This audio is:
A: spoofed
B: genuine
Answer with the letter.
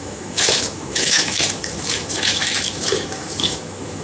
A